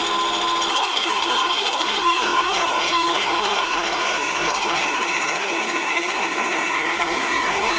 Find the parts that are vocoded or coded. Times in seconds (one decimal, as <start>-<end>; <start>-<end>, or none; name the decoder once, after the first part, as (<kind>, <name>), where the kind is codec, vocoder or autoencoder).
0.7-7.8 (codec, SNAC)